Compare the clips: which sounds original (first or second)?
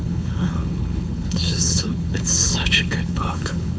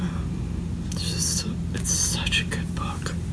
second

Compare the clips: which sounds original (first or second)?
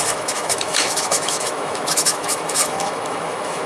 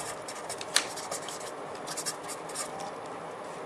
second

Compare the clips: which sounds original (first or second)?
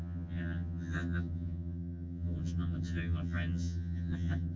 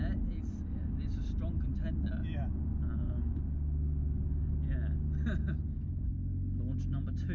second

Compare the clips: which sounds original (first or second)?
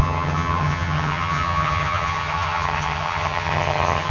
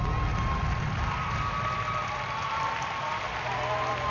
second